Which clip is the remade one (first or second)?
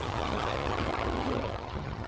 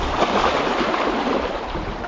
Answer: first